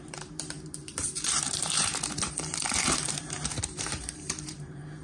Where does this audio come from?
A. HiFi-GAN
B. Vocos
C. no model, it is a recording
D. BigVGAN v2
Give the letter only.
D